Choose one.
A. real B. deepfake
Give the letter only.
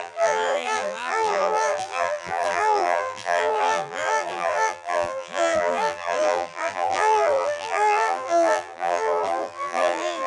B